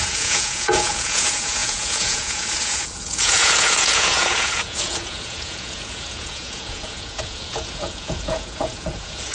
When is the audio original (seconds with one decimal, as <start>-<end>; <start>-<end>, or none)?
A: none